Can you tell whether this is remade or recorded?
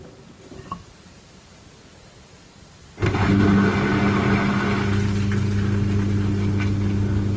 recorded